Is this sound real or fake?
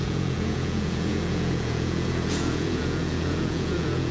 fake